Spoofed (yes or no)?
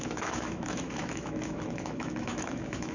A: yes